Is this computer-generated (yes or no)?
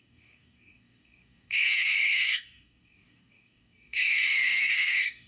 yes